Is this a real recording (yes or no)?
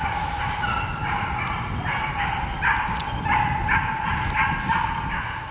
yes